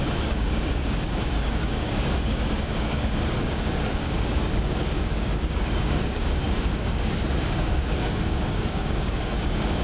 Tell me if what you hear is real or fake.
fake